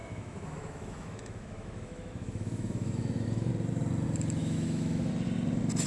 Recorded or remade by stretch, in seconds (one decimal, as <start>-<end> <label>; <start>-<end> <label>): 0.0-3.5 remade; 3.5-4.4 recorded; 4.4-5.1 remade; 5.1-5.9 recorded